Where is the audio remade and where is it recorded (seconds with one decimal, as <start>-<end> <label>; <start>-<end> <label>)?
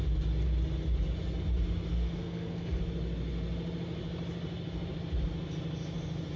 0.0-1.9 recorded; 1.9-2.8 remade; 2.8-6.4 recorded